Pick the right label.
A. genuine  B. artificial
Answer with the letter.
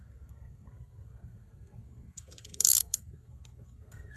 B